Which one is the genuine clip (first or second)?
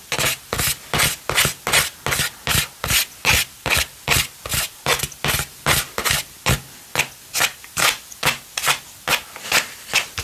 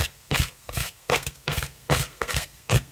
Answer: first